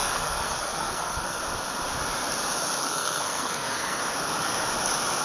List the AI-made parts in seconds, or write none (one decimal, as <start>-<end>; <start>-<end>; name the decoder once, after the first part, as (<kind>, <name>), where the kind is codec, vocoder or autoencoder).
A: 0.0-1.4 (codec, SNAC); 2.8-4.0